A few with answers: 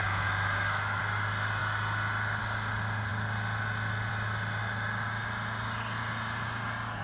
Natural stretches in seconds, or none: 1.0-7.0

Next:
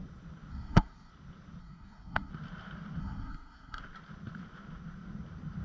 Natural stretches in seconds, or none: 0.0-0.5; 1.1-1.6; 2.3-3.0; 3.8-5.6